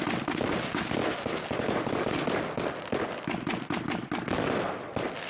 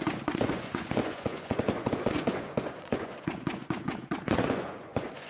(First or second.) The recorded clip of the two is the first